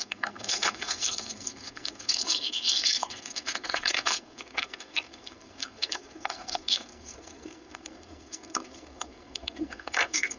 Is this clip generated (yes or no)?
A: yes